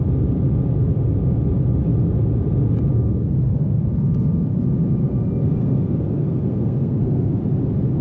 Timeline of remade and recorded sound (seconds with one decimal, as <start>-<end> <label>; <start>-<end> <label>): 0.0-5.0 recorded; 5.0-7.4 remade; 7.4-8.0 recorded